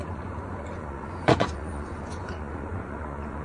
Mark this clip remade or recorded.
remade